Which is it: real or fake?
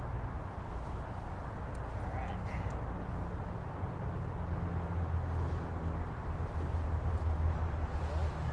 real